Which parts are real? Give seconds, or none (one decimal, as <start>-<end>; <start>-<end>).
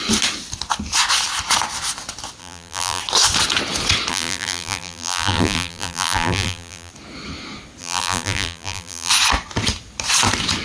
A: 0.0-2.4; 3.0-4.1; 6.9-7.8; 9.1-10.6